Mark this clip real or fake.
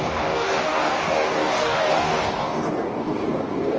fake